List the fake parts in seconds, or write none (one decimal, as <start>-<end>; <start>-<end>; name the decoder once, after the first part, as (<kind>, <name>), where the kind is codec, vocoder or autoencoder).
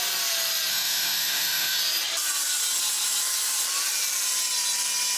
0.7-1.8 (autoencoder, DAC-VAE)